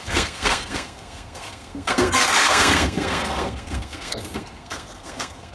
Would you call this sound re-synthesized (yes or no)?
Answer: yes